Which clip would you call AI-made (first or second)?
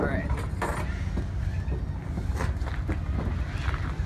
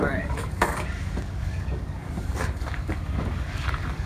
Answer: second